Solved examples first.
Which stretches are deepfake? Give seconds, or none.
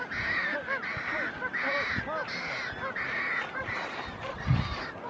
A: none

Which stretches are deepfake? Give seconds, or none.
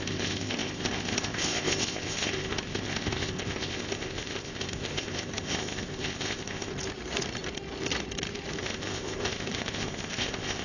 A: 0.0-6.7 (codec, ZipCodec); 8.6-10.6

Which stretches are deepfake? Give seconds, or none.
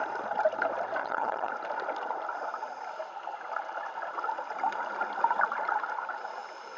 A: 1.0-1.5 (vocoder, HiFi-GAN)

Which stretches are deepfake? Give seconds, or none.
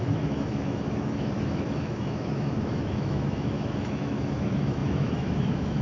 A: 0.0-5.8 (autoencoder, DAC-VAE)